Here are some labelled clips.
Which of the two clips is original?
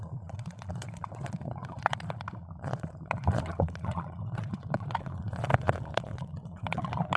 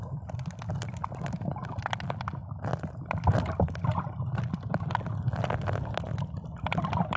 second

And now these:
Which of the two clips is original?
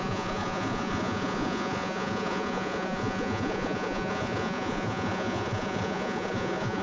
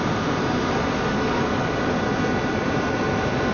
second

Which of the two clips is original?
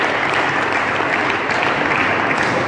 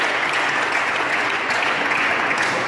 first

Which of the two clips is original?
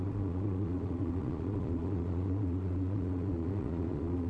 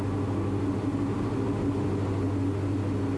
second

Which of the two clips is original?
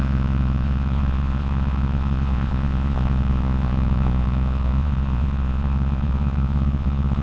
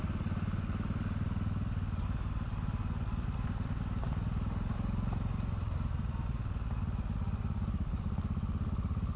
second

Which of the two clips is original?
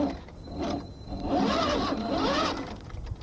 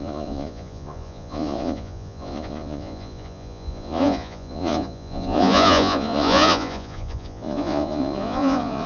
first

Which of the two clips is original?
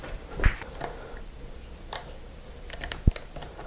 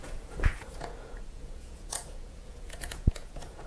first